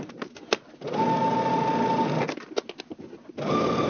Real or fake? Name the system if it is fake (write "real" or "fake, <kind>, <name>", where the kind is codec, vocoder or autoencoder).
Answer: real